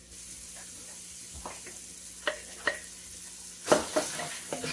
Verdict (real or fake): real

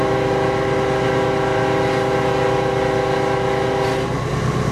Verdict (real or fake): real